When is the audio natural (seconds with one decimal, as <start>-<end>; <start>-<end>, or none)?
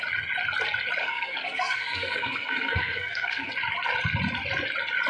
0.0-1.0; 3.5-5.1